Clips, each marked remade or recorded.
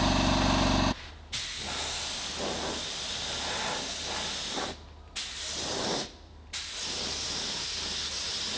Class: recorded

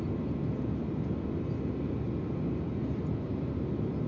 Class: recorded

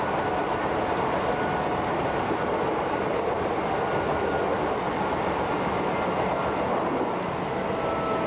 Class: recorded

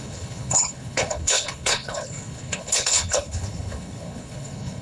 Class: remade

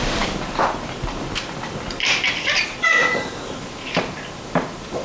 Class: remade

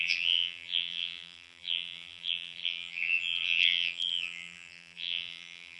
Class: remade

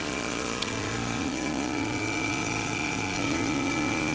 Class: remade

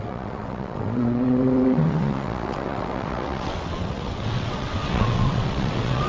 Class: remade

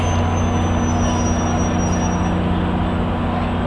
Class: recorded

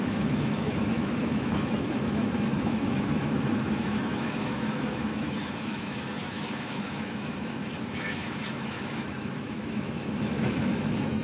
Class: remade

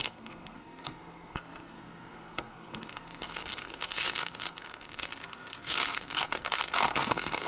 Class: remade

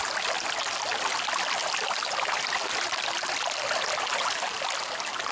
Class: recorded